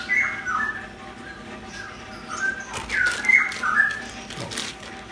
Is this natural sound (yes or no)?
yes